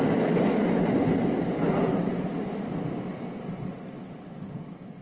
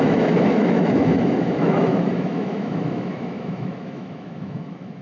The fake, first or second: second